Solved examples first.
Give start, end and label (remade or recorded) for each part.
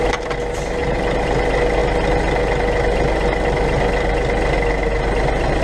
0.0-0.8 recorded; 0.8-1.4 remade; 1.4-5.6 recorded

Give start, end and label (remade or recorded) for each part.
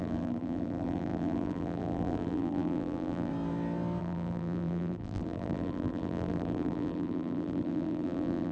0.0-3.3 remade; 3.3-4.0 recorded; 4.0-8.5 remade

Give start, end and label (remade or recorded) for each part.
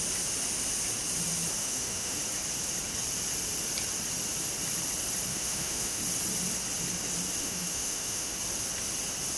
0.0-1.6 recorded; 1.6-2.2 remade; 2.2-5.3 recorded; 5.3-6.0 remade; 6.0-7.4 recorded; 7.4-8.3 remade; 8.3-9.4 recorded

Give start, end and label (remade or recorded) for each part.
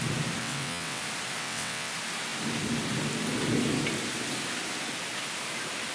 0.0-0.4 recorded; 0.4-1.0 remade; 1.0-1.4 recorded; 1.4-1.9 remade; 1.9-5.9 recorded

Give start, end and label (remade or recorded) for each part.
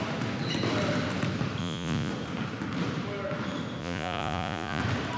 0.0-1.6 recorded; 1.6-2.1 remade; 2.1-3.8 recorded; 3.8-4.8 remade; 4.8-5.2 recorded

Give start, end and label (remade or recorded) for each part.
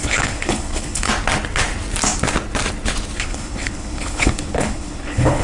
0.0-1.1 remade; 1.1-3.2 recorded; 3.2-5.4 remade